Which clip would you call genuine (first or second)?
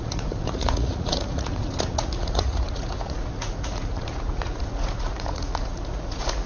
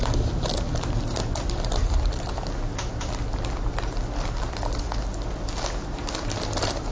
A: second